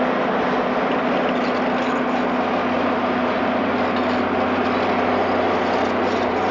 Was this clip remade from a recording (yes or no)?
no